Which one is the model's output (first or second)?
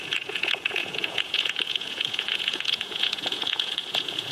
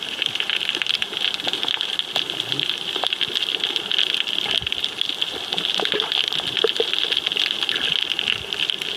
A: first